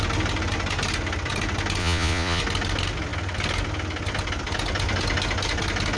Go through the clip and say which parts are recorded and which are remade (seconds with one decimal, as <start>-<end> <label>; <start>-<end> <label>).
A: 0.0-1.8 recorded; 1.8-2.4 remade; 2.4-6.0 recorded